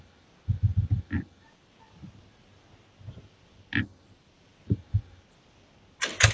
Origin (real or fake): fake